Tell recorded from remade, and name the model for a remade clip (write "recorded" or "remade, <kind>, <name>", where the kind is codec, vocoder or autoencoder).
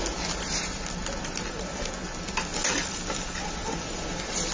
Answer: recorded